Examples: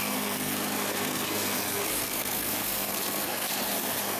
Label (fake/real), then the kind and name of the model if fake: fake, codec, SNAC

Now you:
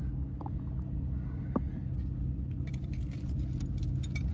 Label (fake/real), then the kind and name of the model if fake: real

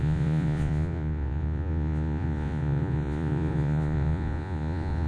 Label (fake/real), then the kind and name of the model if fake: fake, vocoder, Vocos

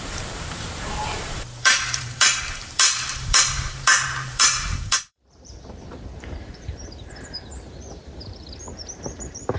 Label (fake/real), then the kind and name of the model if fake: fake, vocoder, BigVGAN v2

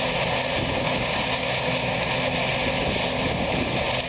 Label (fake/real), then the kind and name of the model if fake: real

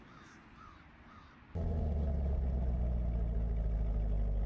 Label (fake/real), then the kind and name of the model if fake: real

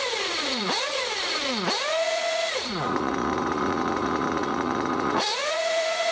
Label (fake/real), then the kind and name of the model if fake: fake, vocoder, Vocos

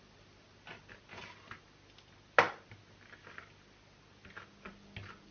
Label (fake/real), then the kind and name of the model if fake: real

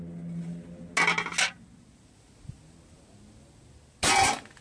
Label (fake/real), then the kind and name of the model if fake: real